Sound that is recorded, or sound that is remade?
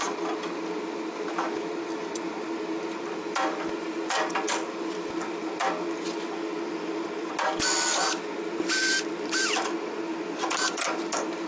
recorded